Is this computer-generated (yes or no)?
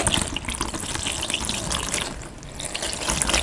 no